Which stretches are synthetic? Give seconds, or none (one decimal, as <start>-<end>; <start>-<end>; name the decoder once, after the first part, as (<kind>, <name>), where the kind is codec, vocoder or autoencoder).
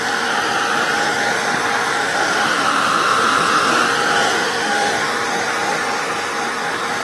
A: 2.0-3.7 (autoencoder, DAC-VAE); 4.3-4.9